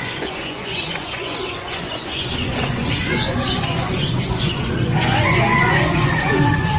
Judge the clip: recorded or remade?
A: remade